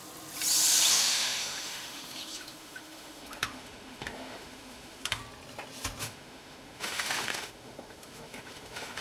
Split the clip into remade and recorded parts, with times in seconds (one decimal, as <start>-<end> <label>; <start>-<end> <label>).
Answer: 0.0-0.9 recorded; 0.9-5.2 remade; 5.2-6.0 recorded; 6.0-9.0 remade